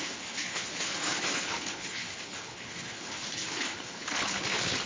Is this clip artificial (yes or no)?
yes